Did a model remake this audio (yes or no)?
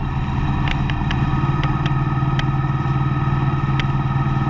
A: no